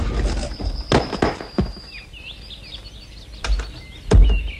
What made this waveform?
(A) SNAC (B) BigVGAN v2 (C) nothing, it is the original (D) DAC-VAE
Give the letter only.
C